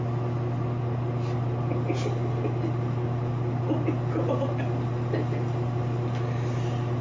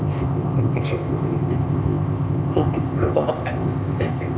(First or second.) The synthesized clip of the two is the second